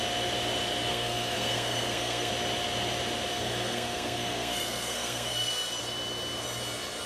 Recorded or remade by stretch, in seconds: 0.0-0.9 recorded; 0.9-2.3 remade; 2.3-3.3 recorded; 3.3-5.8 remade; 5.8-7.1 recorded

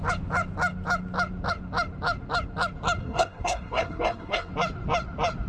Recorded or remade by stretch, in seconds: 0.0-3.0 recorded; 3.0-4.5 remade; 4.5-5.5 recorded

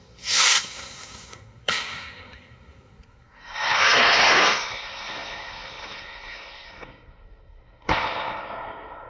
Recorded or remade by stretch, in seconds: 0.0-9.1 remade

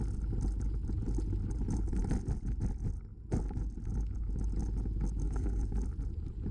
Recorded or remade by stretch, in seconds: 0.0-5.2 recorded; 5.2-5.7 remade; 5.7-6.5 recorded

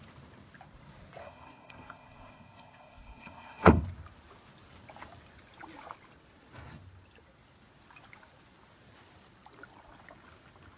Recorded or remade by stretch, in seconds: 0.0-1.2 recorded; 1.2-3.8 remade; 3.8-10.8 recorded

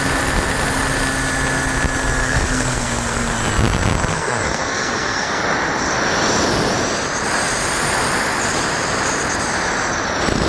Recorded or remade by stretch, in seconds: 0.0-2.2 recorded; 2.2-3.4 remade; 3.4-4.1 recorded; 4.1-5.4 remade; 5.4-10.5 recorded

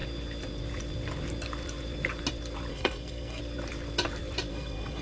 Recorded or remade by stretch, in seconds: 0.0-2.7 recorded; 2.7-3.4 remade; 3.4-4.5 recorded; 4.5-5.0 remade